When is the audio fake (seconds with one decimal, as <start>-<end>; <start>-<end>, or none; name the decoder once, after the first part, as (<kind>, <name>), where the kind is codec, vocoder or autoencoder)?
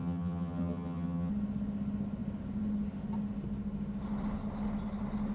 0.0-1.3 (vocoder, HiFi-GAN)